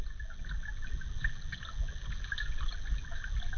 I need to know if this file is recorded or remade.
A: recorded